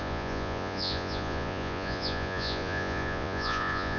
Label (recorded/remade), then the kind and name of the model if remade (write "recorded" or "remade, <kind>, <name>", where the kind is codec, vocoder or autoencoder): remade, vocoder, Vocos